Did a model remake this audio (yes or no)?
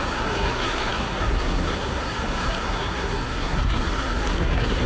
yes